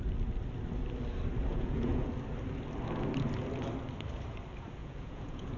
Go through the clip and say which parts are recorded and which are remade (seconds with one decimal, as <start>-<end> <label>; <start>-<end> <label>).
0.0-1.5 recorded; 1.5-2.1 remade; 2.1-4.8 recorded; 4.8-5.6 remade